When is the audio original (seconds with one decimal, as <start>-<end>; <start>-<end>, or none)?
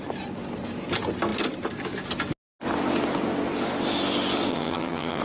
0.0-4.5